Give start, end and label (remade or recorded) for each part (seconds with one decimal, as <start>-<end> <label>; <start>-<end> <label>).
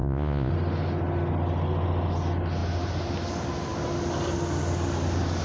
0.0-0.5 remade; 0.5-5.4 recorded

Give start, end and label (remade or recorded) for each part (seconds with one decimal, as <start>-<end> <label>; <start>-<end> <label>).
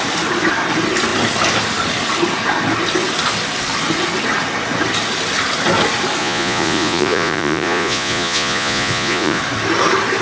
0.0-6.2 recorded; 6.2-9.4 remade; 9.4-10.2 recorded